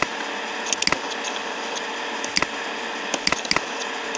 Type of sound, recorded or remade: recorded